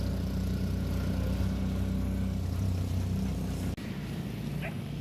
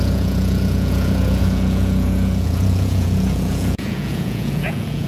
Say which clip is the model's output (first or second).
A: second